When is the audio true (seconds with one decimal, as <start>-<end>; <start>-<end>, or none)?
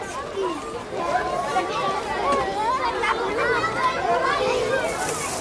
0.0-5.4